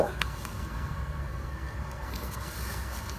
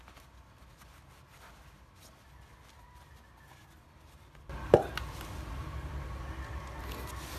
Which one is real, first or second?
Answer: second